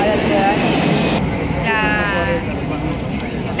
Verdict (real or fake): real